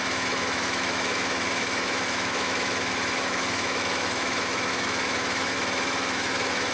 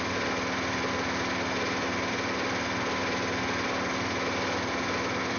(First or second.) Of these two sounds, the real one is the second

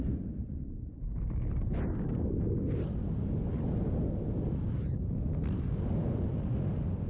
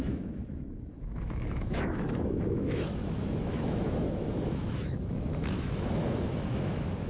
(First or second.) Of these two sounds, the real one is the first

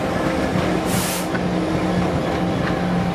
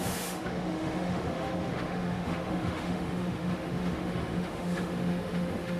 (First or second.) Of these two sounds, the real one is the first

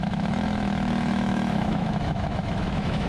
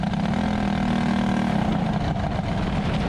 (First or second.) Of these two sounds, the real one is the second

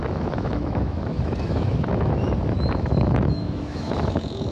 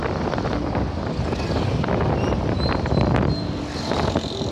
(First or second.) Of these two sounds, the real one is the second